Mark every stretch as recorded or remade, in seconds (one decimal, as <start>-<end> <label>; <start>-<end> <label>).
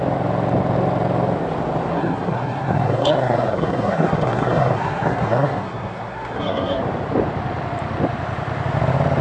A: 0.0-1.9 recorded; 1.9-6.8 remade; 6.8-9.2 recorded